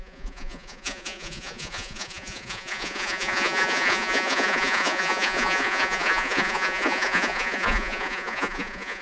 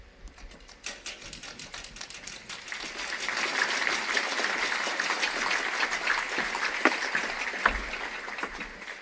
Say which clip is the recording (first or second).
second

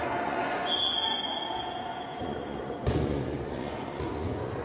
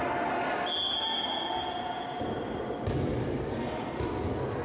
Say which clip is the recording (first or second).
second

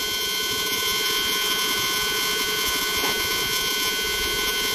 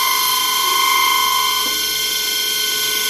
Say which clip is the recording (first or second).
second